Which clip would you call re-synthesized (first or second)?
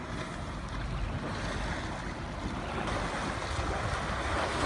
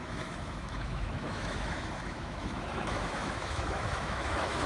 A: second